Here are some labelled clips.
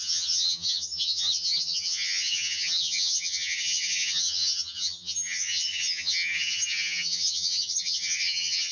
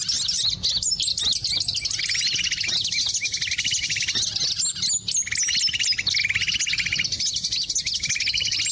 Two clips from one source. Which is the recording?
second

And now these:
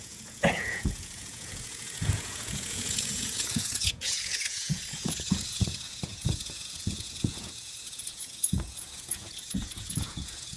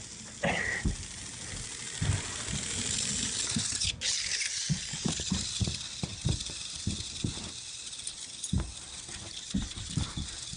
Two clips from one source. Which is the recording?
second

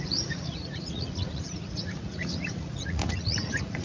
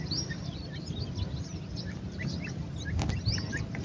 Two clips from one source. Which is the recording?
second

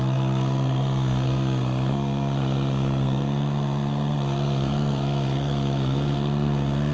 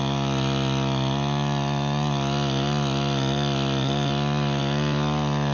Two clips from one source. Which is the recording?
second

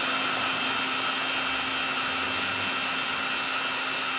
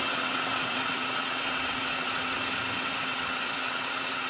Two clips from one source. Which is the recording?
first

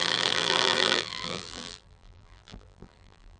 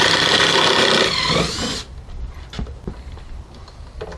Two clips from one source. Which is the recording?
second